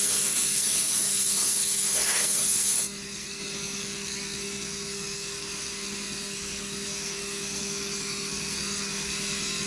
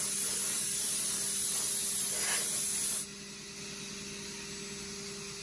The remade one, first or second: first